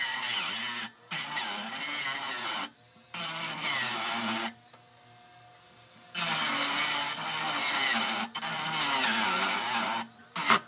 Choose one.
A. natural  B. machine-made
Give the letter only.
A